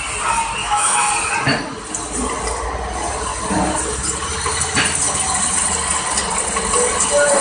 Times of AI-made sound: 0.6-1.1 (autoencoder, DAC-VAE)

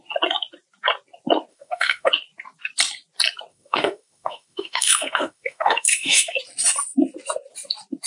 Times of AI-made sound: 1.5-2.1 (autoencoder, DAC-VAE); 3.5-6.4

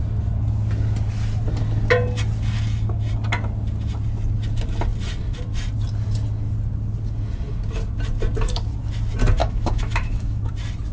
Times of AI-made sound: 9.4-10.5 (autoencoder, DAC-VAE)

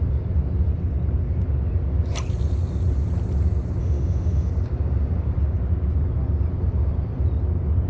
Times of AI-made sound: 3.8-4.5 (autoencoder, DAC-VAE)